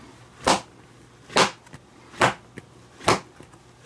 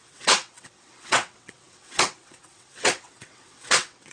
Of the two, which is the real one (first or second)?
first